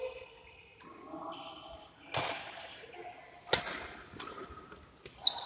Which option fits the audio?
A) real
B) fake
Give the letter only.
A